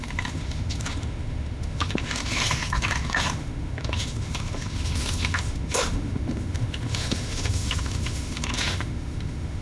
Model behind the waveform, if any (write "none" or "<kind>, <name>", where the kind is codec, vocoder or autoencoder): autoencoder, DAC-VAE